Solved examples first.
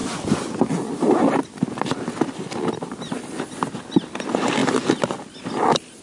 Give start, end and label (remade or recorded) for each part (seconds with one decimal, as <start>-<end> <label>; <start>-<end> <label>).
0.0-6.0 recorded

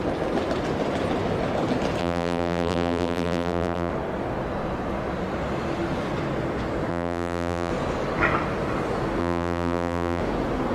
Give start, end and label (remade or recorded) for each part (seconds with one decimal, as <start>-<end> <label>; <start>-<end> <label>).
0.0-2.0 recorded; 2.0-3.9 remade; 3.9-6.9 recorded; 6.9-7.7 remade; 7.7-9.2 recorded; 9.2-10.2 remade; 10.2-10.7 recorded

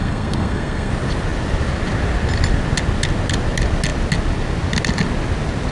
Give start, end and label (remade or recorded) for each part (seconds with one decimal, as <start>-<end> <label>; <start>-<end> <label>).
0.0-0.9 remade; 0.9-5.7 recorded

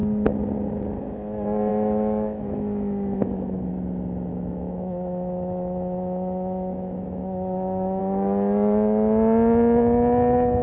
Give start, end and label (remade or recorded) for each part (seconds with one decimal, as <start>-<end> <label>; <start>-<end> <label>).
0.0-1.7 recorded; 1.7-3.7 remade; 3.7-4.3 recorded; 4.3-8.0 remade; 8.0-10.6 recorded